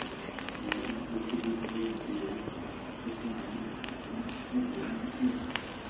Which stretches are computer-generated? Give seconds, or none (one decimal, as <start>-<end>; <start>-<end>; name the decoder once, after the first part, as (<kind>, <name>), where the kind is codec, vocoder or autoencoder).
none